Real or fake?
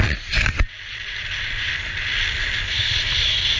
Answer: real